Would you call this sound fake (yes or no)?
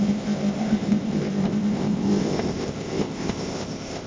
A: yes